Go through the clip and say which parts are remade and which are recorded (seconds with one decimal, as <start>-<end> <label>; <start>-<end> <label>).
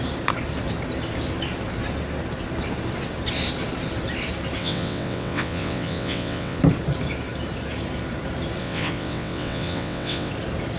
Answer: 0.0-4.6 recorded; 4.6-6.6 remade; 6.6-8.6 recorded; 8.6-10.3 remade; 10.3-10.8 recorded